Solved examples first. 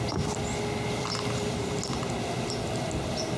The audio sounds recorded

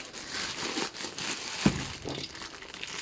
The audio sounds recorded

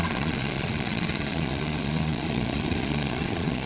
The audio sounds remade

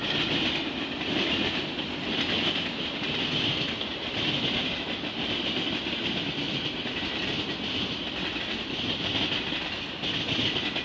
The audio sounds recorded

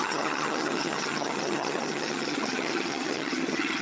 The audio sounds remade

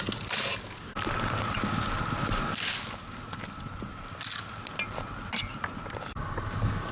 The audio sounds recorded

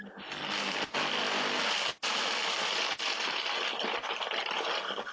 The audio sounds recorded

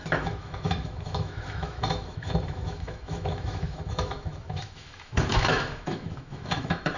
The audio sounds remade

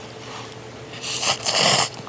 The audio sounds remade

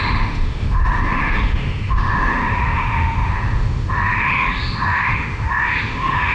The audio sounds remade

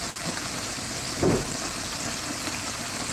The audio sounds recorded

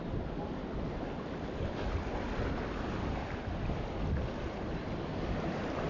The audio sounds recorded